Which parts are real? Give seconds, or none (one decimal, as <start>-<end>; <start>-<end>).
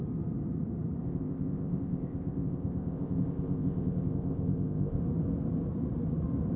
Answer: 0.0-1.0; 5.0-6.6